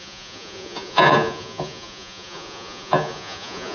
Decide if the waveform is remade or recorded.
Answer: remade